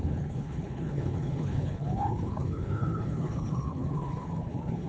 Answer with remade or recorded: remade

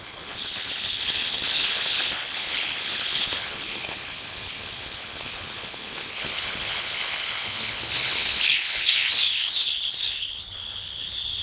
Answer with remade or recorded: remade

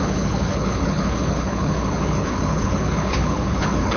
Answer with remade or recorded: remade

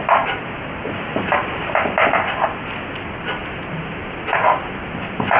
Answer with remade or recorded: recorded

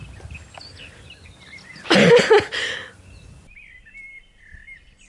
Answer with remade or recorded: recorded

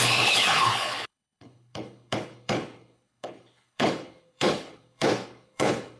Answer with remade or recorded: remade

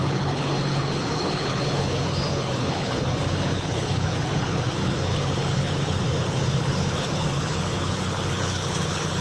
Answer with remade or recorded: remade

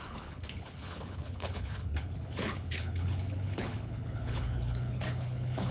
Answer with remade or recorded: remade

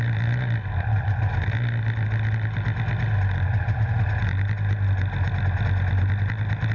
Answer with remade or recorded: recorded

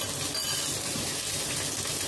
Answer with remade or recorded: recorded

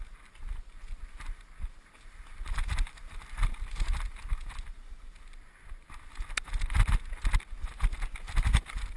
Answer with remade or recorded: recorded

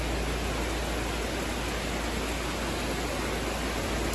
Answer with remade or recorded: recorded